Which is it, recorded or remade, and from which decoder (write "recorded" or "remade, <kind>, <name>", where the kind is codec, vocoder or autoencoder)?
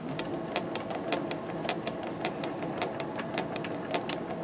recorded